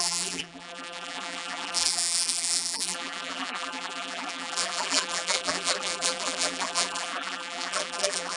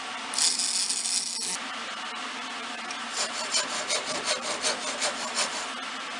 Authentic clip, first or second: second